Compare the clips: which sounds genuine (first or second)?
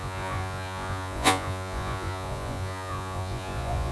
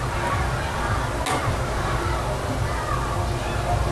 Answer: second